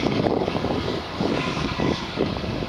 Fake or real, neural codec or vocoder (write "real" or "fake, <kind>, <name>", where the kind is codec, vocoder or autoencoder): fake, codec, DAC